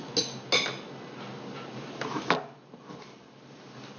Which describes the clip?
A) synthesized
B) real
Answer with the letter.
B